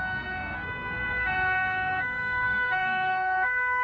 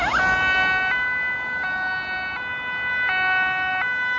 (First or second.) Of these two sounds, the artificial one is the first